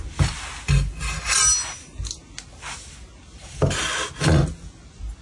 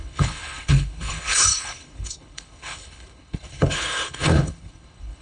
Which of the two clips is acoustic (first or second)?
first